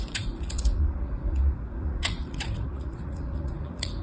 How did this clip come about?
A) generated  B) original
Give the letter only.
A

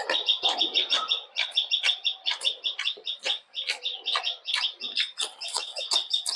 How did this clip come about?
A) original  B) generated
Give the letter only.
A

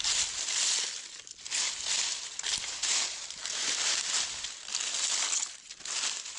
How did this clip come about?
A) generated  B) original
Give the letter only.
B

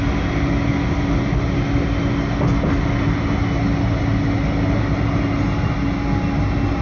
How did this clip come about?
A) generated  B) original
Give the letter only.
B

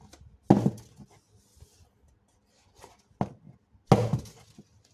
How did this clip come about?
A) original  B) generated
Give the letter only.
A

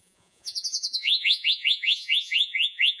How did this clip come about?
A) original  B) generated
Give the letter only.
B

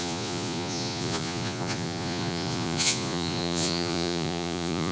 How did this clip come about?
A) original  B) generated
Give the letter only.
B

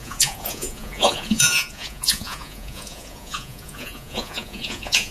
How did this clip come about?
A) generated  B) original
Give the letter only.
A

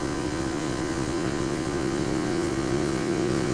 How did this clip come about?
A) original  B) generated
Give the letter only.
B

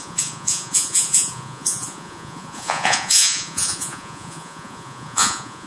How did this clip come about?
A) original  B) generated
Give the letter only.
B